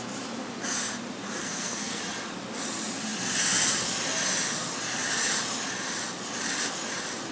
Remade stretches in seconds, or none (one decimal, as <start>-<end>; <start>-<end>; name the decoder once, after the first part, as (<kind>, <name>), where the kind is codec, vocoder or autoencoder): 1.4-2.0 (codec, SNAC)